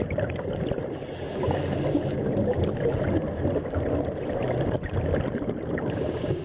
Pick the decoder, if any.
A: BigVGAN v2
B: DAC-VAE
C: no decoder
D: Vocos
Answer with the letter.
C